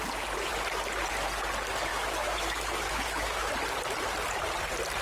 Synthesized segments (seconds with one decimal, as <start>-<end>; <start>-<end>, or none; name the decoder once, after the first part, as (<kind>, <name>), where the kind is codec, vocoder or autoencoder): 1.9-3.5 (autoencoder, DAC-VAE)